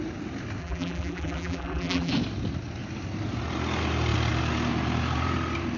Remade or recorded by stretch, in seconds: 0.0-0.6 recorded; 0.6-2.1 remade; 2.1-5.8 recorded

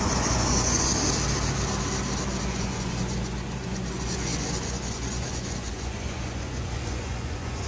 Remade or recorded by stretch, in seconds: 0.0-0.9 remade; 0.9-2.4 recorded; 2.4-7.7 remade

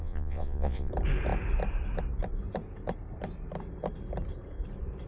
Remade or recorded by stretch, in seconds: 0.0-0.9 remade; 0.9-5.1 recorded

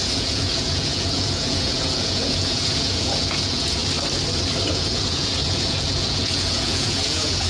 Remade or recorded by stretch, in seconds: 0.0-3.8 remade; 3.8-4.7 recorded; 4.7-7.5 remade

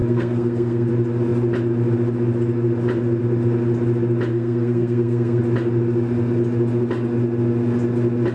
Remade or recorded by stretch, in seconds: 0.0-0.9 remade; 0.9-4.3 recorded; 4.3-5.4 remade; 5.4-8.3 recorded

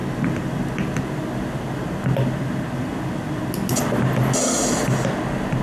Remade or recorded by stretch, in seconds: 0.0-5.6 recorded